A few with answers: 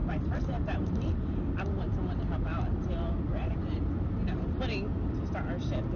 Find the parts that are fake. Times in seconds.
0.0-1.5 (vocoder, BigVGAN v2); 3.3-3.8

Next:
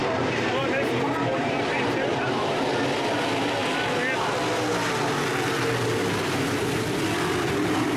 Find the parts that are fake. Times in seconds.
0.0-2.7 (vocoder, BigVGAN v2)

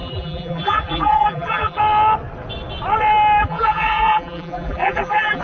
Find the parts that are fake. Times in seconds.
0.0-1.8 (vocoder, BigVGAN v2); 3.4-5.4

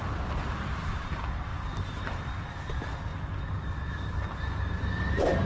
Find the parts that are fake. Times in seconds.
1.5-2.3 (vocoder, BigVGAN v2)

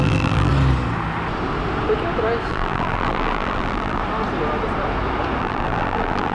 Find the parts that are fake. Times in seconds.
0.0-0.5 (vocoder, BigVGAN v2); 2.5-4.0; 5.4-6.3